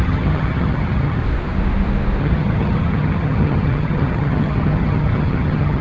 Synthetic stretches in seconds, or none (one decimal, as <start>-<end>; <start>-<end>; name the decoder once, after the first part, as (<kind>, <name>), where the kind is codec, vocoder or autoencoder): 0.0-1.2 (vocoder, HiFi-GAN); 2.2-5.8